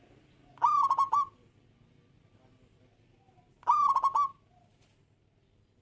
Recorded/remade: recorded